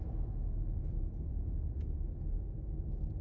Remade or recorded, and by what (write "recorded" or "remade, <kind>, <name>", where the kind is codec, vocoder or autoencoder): recorded